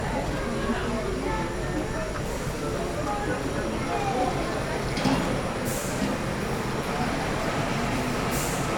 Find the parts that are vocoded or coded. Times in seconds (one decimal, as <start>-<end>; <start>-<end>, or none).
5.7-8.8

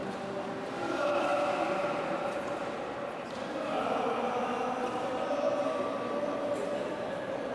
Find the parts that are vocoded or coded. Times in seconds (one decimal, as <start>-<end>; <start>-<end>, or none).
0.8-1.3; 2.8-7.5

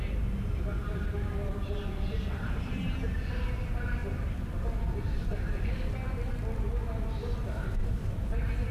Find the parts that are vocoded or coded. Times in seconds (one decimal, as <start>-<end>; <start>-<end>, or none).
0.8-3.1; 4.0-4.6

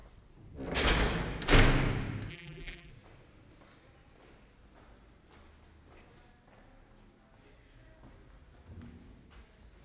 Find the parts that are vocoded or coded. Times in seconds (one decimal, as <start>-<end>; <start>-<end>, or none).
2.3-2.9

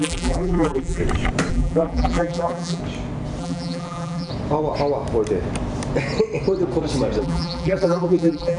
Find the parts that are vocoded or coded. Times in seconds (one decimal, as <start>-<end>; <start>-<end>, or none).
0.0-1.0; 1.5-2.8; 3.4-4.3; 7.2-8.6

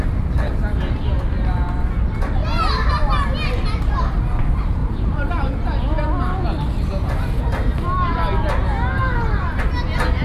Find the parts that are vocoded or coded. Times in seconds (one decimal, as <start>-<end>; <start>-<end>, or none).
2.4-2.9; 4.8-5.3

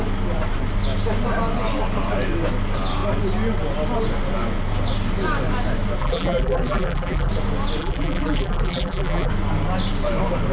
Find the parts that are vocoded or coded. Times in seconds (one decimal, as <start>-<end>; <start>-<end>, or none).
6.0-7.3; 7.8-9.3

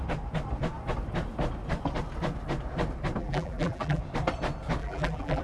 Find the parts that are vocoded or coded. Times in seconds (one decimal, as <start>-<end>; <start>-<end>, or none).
3.2-4.0; 4.8-5.4